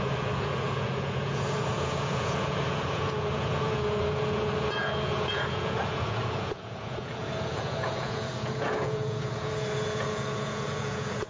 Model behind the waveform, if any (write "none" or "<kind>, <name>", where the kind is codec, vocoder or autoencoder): vocoder, Vocos